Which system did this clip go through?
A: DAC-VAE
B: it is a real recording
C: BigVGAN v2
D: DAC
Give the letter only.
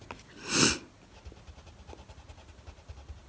B